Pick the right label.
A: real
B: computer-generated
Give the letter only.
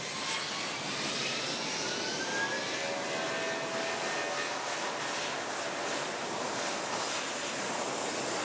A